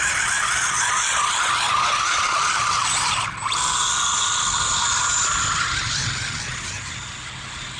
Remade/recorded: recorded